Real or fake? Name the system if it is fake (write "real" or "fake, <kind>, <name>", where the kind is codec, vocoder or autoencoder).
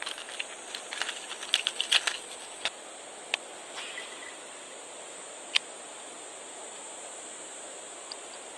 real